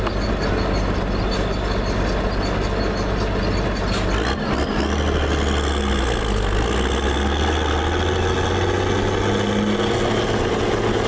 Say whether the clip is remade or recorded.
recorded